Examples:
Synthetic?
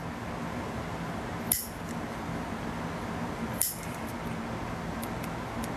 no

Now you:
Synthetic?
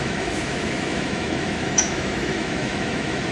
yes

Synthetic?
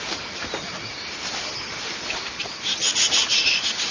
no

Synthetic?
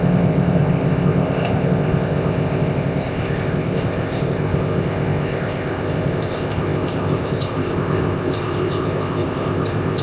yes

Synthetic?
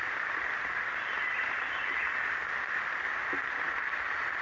yes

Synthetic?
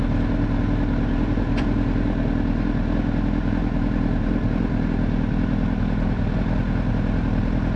no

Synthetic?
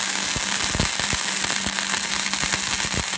no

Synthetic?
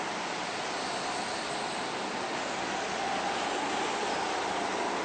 no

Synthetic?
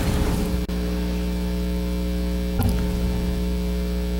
no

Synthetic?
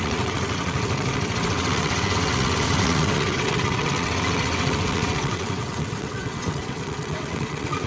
yes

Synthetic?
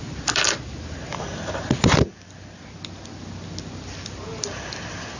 no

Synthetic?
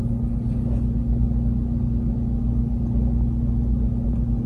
no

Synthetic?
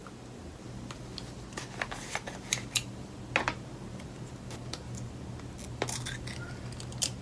no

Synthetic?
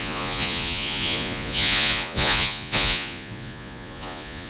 yes